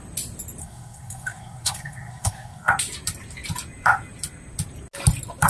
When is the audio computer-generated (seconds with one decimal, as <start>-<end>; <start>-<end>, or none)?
0.6-2.7